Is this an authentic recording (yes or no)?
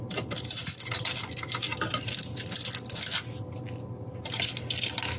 yes